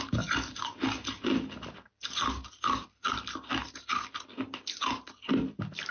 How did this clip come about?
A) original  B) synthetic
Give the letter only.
A